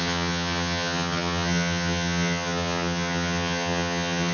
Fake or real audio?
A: fake